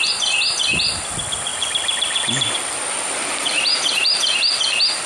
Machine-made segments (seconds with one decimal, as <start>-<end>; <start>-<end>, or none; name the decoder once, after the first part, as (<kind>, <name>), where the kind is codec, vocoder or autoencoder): 1.5-4.6 (vocoder, BigVGAN v2)